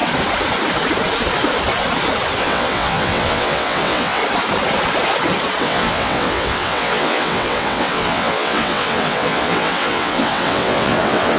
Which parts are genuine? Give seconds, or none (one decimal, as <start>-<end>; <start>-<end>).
0.0-2.4; 4.2-5.6